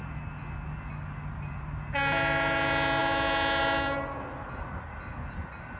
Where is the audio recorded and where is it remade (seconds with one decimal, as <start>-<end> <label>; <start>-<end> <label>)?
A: 0.0-5.8 recorded